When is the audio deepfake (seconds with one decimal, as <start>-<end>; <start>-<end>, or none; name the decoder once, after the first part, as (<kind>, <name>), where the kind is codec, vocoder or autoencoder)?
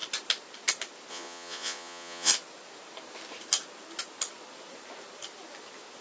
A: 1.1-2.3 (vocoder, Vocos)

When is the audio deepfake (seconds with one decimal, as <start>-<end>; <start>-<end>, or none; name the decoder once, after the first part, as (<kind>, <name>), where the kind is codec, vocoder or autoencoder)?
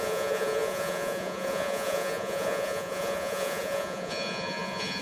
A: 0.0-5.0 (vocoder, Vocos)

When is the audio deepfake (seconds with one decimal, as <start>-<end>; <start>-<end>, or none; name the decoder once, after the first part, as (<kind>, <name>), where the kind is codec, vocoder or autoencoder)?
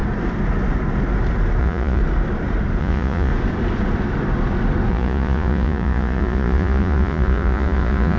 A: 1.6-2.0 (vocoder, Vocos); 2.8-3.3; 4.9-8.2